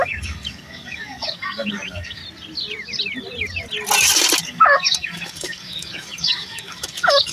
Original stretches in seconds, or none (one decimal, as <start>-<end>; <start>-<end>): 2.2-4.4